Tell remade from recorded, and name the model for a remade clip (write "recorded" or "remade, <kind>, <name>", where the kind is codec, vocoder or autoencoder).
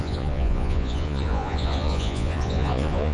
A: remade, vocoder, Vocos